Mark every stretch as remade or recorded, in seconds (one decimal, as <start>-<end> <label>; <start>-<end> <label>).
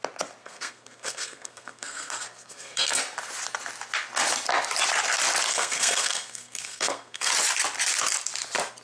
0.0-0.4 recorded; 0.4-3.0 remade; 3.0-5.5 recorded; 5.5-7.3 remade; 7.3-8.8 recorded